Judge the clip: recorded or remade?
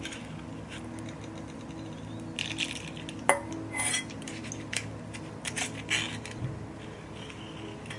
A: recorded